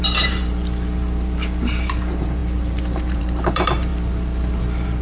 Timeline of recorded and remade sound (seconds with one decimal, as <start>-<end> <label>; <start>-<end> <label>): 0.0-5.0 remade